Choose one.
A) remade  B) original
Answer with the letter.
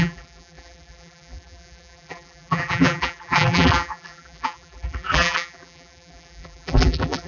A